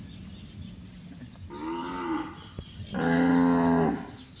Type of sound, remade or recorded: recorded